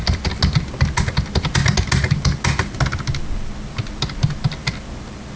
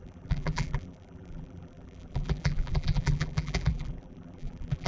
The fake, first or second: second